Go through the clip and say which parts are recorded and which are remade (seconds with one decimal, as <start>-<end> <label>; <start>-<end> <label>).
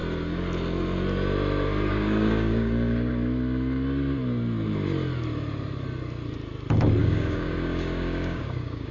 0.0-1.9 recorded; 1.9-3.1 remade; 3.1-7.0 recorded; 7.0-8.9 remade